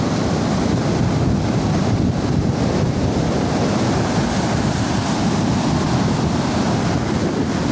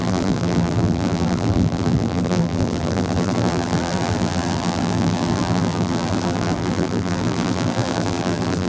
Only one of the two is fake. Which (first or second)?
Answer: second